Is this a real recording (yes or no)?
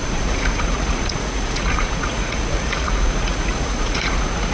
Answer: no